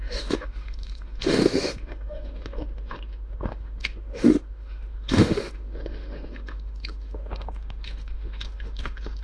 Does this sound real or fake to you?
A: fake